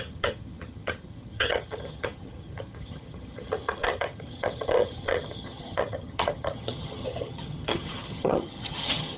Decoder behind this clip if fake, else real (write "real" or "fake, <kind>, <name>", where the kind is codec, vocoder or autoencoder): fake, vocoder, HiFi-GAN